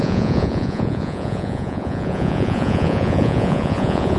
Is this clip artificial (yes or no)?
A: yes